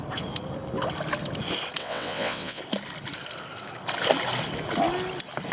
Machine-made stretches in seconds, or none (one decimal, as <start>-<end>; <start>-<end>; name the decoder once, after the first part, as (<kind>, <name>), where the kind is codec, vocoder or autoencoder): 1.8-2.6 (vocoder, WaveNeXt)